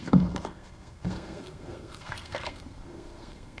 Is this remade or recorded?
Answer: remade